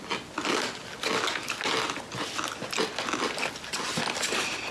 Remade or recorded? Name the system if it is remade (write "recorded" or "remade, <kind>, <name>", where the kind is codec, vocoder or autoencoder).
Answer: recorded